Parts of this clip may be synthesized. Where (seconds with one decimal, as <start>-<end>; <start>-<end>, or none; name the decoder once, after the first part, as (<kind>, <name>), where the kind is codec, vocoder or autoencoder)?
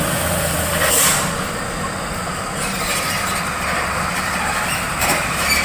0.0-0.7 (vocoder, BigVGAN v2); 4.1-5.6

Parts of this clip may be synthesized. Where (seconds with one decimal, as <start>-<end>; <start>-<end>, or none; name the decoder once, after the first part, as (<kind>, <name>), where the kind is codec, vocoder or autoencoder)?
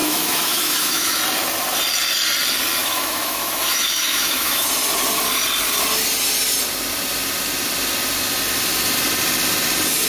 0.0-1.2 (autoencoder, DAC-VAE); 2.8-4.7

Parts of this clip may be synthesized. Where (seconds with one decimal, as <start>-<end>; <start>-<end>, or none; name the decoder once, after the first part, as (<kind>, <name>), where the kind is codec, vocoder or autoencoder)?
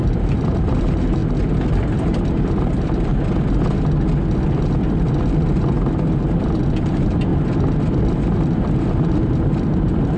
0.0-1.2 (vocoder, BigVGAN v2); 1.7-3.1; 6.2-7.3; 8.0-10.2